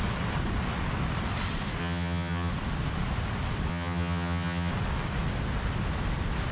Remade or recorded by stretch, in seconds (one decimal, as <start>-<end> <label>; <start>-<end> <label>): 0.0-1.8 recorded; 1.8-2.5 remade; 2.5-3.7 recorded; 3.7-4.7 remade; 4.7-6.5 recorded